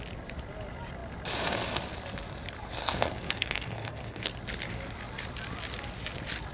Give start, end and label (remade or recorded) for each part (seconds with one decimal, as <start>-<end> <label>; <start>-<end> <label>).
0.0-2.8 recorded; 2.8-4.3 remade; 4.3-6.5 recorded